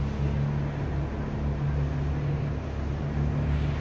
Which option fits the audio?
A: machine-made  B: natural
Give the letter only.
B